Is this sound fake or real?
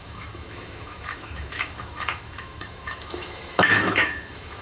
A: fake